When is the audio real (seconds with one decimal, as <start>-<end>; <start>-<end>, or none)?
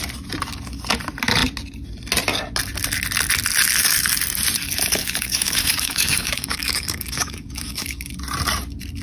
0.0-5.0; 8.1-9.0